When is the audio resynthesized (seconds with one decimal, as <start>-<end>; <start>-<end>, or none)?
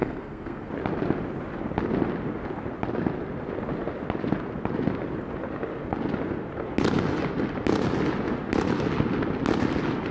0.0-0.7